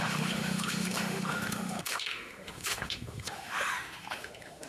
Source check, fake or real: fake